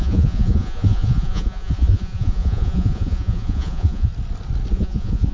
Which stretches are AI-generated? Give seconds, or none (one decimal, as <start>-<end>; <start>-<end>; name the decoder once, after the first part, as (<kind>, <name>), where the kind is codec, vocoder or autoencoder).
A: 0.0-4.1 (vocoder, Vocos); 4.7-5.3